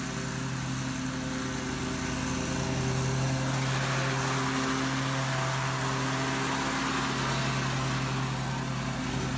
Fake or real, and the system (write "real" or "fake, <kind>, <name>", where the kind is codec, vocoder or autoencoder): real